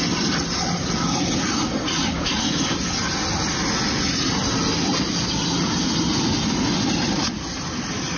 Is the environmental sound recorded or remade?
recorded